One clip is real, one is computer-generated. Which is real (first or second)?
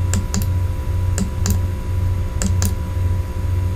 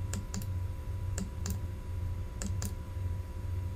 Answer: first